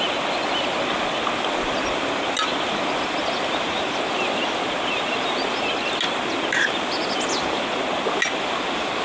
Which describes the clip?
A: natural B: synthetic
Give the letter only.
A